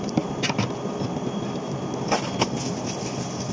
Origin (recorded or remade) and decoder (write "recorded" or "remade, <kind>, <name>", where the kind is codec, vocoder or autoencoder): recorded